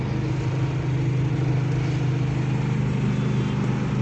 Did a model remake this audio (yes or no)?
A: no